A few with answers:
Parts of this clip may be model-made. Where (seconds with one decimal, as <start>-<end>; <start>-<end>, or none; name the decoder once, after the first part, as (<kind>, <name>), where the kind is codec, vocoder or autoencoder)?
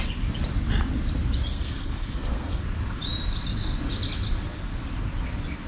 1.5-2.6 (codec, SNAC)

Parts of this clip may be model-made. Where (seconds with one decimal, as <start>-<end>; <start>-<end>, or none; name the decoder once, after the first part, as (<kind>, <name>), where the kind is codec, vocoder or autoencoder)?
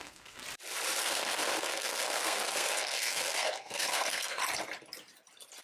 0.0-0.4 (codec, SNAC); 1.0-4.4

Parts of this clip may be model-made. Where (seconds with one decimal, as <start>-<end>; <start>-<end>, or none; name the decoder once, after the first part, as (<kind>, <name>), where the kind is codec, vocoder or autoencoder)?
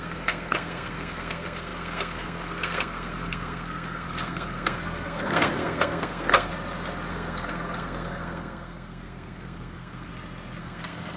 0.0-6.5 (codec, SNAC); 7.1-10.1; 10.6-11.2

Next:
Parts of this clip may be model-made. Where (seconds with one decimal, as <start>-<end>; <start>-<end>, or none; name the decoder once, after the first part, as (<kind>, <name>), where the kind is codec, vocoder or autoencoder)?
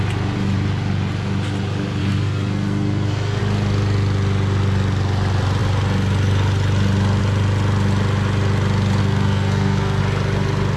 2.0-3.4 (codec, SNAC); 9.0-10.0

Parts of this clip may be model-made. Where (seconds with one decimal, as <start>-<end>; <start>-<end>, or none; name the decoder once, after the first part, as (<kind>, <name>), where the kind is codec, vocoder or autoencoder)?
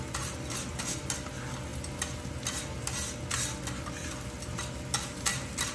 none